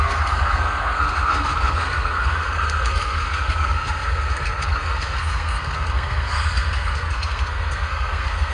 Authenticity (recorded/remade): remade